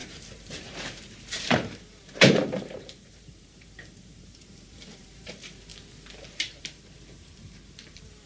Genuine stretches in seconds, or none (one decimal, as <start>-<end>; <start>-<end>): 5.7-6.3